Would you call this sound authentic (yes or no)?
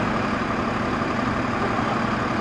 yes